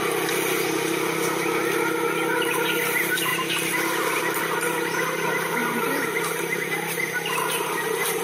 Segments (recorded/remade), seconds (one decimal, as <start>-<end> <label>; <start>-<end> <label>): 0.0-5.6 recorded; 5.6-8.2 remade